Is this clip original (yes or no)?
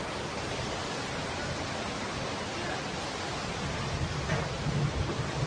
yes